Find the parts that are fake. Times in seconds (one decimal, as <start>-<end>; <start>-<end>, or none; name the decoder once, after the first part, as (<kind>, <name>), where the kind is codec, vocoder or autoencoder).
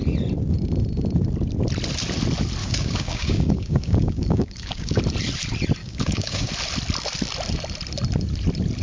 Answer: 2.6-5.0 (codec, DAC); 5.8-6.5